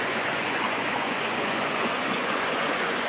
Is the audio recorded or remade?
remade